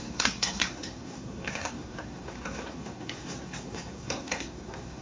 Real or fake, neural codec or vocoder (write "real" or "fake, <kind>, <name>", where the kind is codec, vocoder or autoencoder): fake, codec, SNAC